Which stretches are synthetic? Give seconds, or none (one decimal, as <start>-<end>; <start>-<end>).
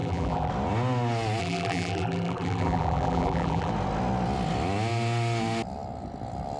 0.0-0.5; 1.4-3.7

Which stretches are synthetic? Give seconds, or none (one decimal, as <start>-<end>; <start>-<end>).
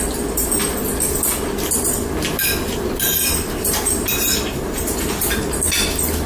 3.3-5.4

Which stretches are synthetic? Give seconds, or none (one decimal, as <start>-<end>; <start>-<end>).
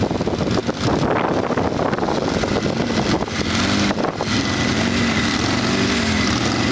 none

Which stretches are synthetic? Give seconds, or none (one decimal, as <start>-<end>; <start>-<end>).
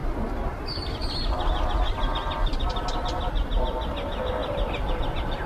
4.4-5.5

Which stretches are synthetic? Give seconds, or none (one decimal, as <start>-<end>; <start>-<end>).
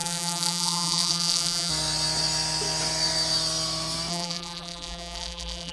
0.0-1.7; 4.1-5.7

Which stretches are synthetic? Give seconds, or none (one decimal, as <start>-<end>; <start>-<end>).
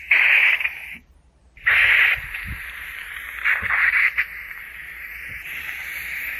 0.0-6.4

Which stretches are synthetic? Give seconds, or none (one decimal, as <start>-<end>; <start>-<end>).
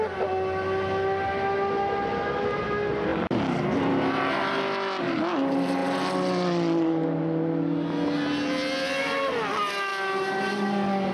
3.1-3.9